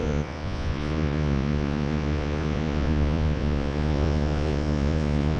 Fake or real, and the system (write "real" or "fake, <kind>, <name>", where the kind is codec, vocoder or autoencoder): fake, vocoder, Vocos